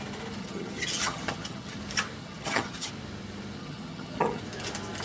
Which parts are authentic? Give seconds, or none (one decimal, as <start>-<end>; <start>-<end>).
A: 0.0-0.4; 1.8-2.2; 2.9-3.6; 4.4-5.0